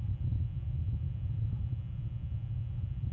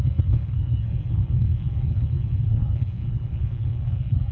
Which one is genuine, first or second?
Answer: first